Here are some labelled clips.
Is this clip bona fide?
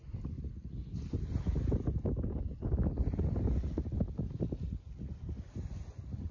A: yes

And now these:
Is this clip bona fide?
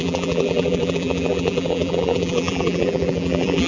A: no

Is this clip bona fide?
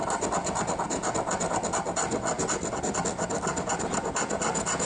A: yes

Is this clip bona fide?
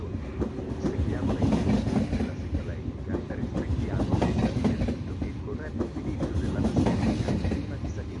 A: yes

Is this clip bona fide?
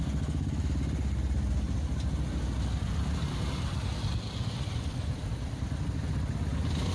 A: yes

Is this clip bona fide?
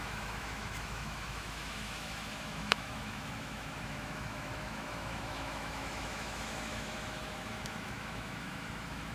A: no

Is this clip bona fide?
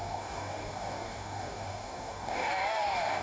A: no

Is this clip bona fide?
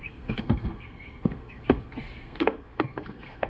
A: no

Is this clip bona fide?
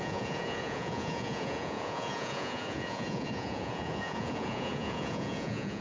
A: no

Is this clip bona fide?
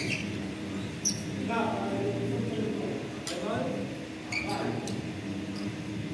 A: yes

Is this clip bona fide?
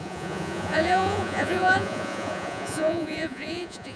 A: no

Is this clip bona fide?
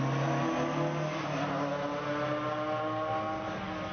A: yes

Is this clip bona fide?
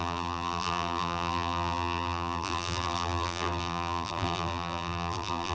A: no